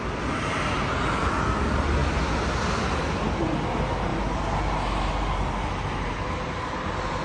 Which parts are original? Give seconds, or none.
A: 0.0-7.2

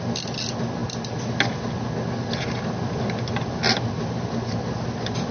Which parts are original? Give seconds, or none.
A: 0.8-4.0

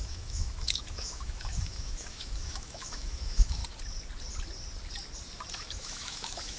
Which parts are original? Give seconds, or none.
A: 3.6-5.5

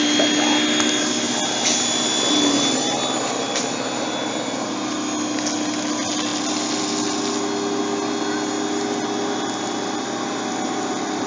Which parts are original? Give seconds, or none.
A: 0.0-11.3

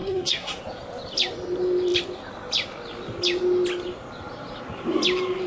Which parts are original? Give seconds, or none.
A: 0.6-5.5